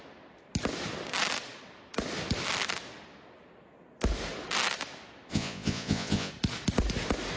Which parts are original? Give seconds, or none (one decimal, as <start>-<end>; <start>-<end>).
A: 0.0-5.3; 6.3-7.4